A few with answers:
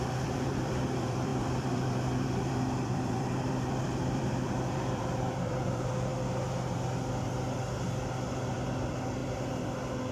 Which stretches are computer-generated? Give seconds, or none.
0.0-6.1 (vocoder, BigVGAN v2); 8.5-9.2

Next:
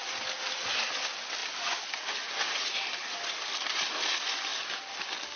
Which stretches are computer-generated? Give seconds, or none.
none